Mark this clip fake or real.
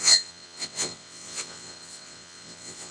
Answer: fake